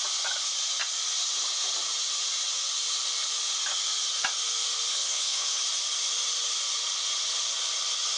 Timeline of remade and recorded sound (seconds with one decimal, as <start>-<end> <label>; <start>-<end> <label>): 0.0-4.9 recorded; 4.9-5.6 remade; 5.6-8.2 recorded